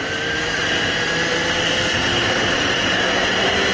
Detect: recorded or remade recorded